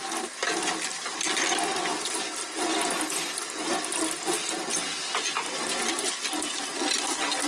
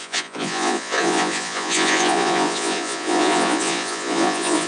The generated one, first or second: second